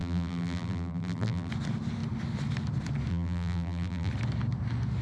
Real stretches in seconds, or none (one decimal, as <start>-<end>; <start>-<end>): 1.5-3.1; 4.1-5.0